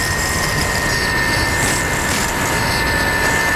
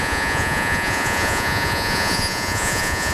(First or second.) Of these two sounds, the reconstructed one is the second